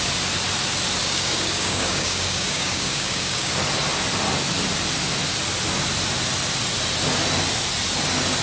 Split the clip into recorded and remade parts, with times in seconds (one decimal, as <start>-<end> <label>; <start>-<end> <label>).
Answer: 0.0-1.0 recorded; 1.0-3.5 remade; 3.5-8.4 recorded

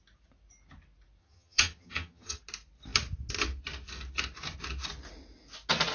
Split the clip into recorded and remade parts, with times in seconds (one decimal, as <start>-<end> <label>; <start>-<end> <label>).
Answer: 0.0-1.2 recorded; 1.2-2.4 remade; 2.4-5.9 recorded